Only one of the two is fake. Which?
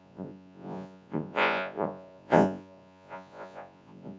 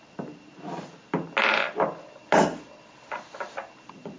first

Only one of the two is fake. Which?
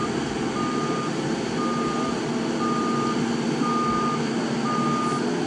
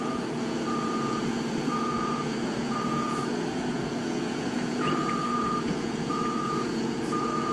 second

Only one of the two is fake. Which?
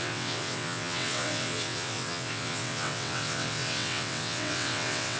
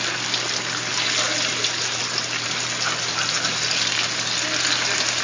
first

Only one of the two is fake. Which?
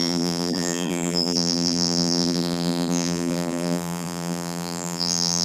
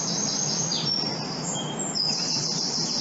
first